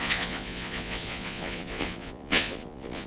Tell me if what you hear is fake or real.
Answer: fake